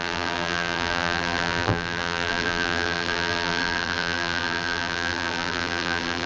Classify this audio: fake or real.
fake